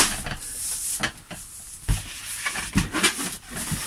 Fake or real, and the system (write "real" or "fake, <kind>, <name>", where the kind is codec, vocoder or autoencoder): real